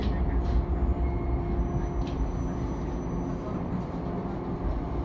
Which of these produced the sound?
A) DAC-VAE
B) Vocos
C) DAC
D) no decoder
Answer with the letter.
D